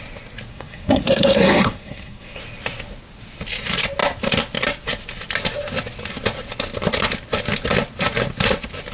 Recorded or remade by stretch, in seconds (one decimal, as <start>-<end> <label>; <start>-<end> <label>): 0.0-0.5 recorded; 0.5-2.4 remade; 2.4-8.9 recorded